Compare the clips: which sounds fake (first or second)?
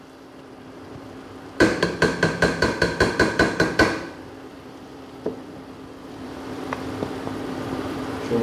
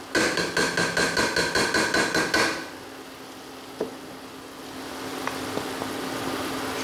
first